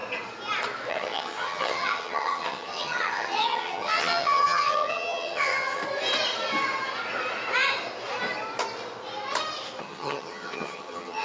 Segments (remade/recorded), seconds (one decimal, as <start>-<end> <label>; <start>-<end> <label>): 0.0-0.9 recorded; 0.9-5.8 remade; 5.8-9.8 recorded; 9.8-11.2 remade